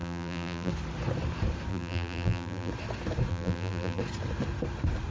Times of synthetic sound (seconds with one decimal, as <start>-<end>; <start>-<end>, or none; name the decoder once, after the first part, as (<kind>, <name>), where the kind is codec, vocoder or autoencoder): 0.0-0.7 (vocoder, BigVGAN v2); 1.7-2.7; 3.3-4.0